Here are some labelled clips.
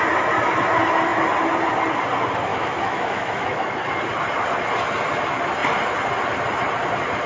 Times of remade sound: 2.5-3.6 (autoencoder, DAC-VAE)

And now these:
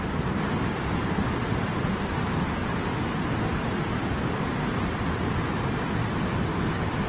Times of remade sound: 6.5-7.1 (autoencoder, DAC-VAE)

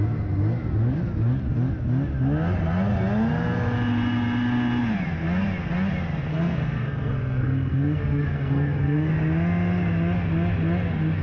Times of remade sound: 6.3-9.1 (codec, SNAC)

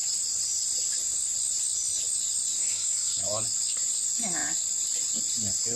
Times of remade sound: 2.6-3.2 (codec, SNAC)

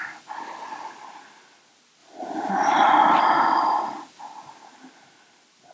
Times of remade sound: none

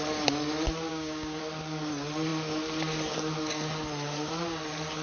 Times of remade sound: 0.9-1.4 (codec, DAC)